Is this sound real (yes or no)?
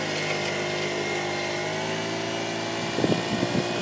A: yes